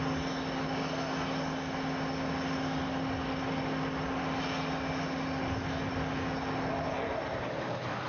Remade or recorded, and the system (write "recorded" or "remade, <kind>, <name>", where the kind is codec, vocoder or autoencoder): recorded